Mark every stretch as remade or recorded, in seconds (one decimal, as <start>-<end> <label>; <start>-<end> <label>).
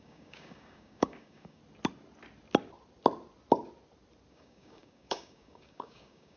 0.0-1.6 remade; 1.6-4.3 recorded; 4.3-6.4 remade